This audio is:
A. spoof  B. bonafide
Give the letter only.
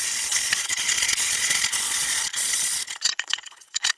A